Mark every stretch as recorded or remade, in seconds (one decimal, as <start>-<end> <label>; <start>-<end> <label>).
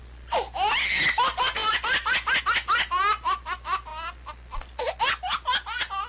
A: 0.0-6.1 recorded